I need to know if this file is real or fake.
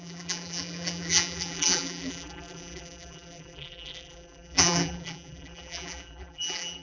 fake